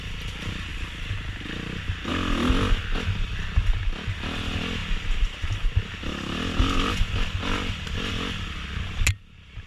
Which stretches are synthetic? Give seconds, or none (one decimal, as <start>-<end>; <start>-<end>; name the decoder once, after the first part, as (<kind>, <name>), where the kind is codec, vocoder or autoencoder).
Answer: none